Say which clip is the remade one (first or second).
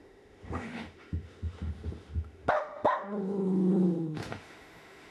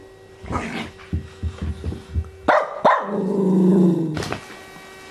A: first